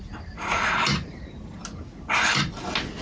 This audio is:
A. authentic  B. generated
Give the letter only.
A